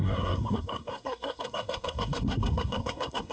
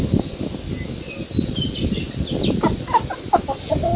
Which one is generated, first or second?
first